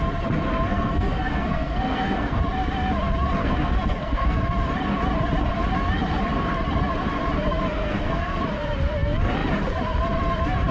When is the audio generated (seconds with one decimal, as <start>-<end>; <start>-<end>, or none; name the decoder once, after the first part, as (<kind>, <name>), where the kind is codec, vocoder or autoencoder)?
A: 0.7-2.4 (codec, SNAC); 3.4-4.4; 7.8-8.4